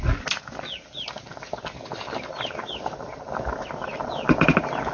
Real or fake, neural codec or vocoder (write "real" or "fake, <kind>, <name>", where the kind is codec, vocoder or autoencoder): real